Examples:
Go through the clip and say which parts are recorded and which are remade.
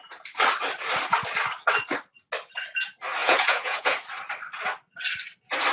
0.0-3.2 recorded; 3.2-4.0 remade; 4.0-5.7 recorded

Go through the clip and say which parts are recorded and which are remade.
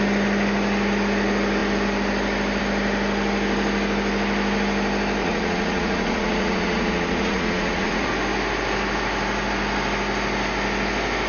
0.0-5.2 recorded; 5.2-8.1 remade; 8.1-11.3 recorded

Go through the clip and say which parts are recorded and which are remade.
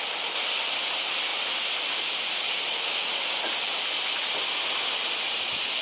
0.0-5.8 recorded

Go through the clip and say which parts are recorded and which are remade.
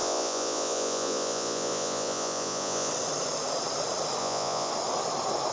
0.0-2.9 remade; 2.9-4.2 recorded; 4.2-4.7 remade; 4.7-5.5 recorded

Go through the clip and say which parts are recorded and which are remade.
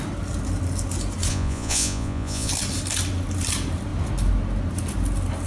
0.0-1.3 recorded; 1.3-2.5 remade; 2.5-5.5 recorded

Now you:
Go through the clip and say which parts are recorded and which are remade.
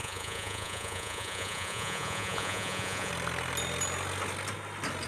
0.0-3.1 remade; 3.1-5.1 recorded